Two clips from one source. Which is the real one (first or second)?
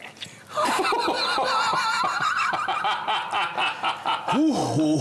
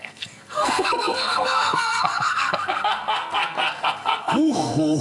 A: first